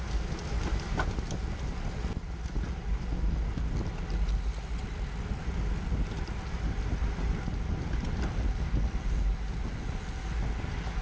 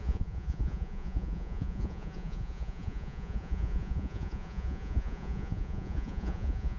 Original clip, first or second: first